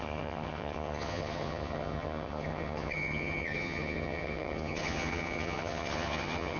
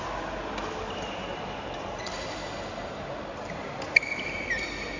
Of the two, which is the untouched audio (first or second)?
second